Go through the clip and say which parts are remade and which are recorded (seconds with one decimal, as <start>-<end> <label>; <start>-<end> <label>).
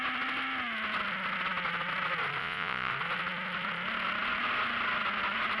0.0-2.4 recorded; 2.4-2.9 remade; 2.9-5.6 recorded